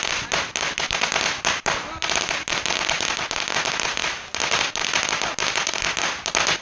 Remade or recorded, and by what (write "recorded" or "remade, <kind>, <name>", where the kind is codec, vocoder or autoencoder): recorded